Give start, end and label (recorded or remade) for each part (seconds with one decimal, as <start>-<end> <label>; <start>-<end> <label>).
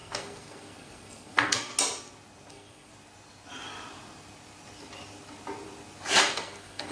0.0-1.7 remade; 1.7-2.5 recorded; 2.5-2.9 remade; 2.9-6.2 recorded; 6.2-6.9 remade